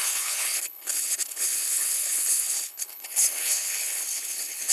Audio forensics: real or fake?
fake